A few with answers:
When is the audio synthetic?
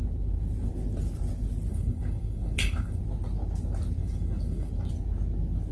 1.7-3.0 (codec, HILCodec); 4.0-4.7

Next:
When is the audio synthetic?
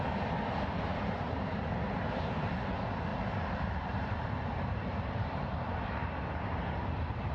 0.9-2.2 (vocoder, BigVGAN v2); 3.1-6.8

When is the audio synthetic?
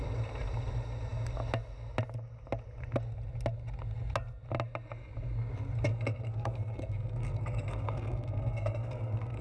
5.9-9.4 (codec, SNAC)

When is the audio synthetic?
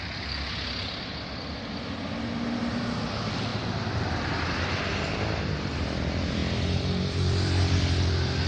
3.5-4.9 (vocoder, BigVGAN v2); 6.4-7.8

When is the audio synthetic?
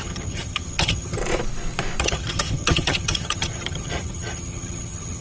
0.0-1.2 (vocoder, HiFi-GAN); 2.0-5.2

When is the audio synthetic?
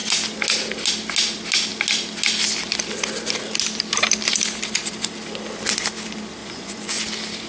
6.4-7.0 (vocoder, Vocos)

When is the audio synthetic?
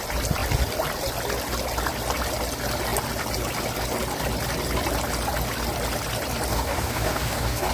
6.5-7.7 (codec, DAC)